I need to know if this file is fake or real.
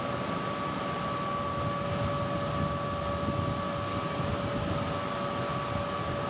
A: real